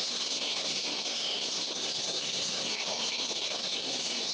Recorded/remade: remade